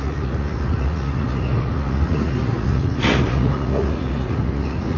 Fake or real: fake